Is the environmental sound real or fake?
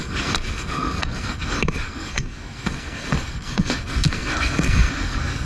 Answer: fake